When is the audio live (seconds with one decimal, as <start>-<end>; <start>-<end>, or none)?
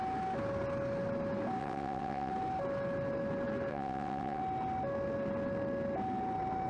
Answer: 0.0-1.6; 2.3-3.7; 4.4-6.7